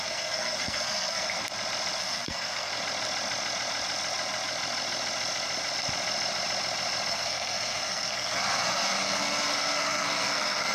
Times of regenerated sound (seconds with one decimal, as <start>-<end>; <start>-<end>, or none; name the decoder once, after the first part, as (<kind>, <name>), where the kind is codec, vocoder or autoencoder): 0.0-1.4 (codec, SNAC); 2.0-2.7; 7.1-10.7